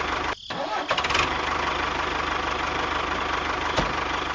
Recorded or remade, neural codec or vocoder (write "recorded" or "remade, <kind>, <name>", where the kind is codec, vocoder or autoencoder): recorded